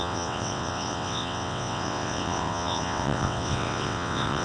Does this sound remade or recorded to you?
remade